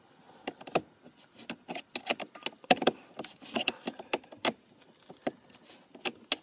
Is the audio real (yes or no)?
yes